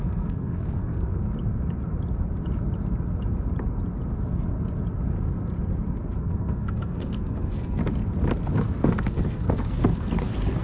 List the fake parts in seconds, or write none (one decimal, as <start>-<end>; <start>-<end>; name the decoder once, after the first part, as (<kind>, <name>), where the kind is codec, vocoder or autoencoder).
0.0-1.2 (codec, SNAC); 6.2-7.8; 8.6-10.6